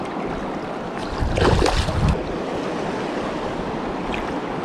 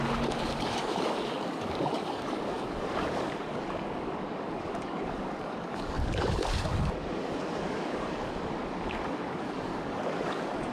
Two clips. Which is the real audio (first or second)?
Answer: first